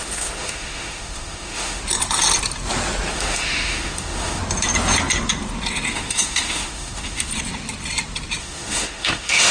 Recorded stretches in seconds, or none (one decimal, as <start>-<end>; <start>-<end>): 1.8-3.1; 4.4-5.9; 7.3-8.4